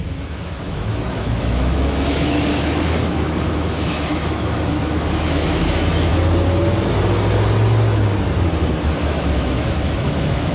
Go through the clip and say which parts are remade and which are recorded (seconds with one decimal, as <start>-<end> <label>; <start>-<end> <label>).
0.0-6.1 remade; 6.1-9.0 recorded; 9.0-10.5 remade